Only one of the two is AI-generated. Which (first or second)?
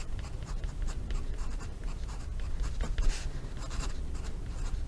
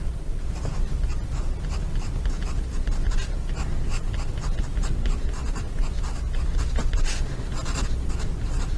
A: first